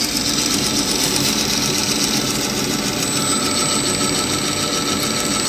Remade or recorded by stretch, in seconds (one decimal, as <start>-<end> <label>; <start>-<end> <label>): 0.0-5.5 recorded